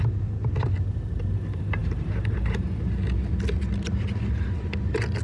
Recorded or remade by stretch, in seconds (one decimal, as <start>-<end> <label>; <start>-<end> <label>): 0.0-5.2 recorded